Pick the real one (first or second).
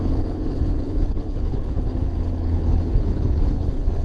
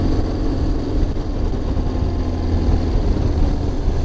second